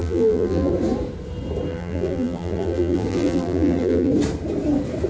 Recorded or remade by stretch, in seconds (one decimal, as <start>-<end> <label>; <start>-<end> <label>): 0.0-0.7 remade; 0.7-1.7 recorded; 1.7-4.1 remade; 4.1-5.1 recorded